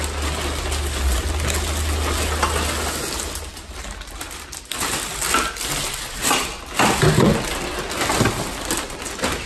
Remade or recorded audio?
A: recorded